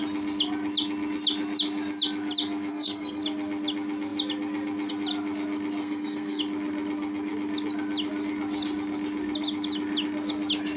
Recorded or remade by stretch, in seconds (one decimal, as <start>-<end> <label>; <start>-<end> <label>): 0.0-2.7 recorded; 2.7-3.2 remade; 3.2-5.8 recorded; 5.8-6.4 remade; 6.4-10.8 recorded